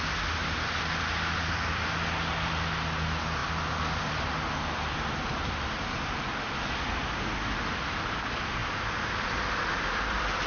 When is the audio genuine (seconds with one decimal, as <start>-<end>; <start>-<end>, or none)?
0.0-10.5